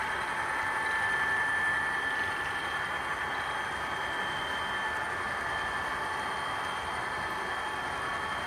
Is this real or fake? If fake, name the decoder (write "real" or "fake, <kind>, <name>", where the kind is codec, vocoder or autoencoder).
real